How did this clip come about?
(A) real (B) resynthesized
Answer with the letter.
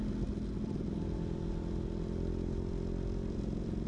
A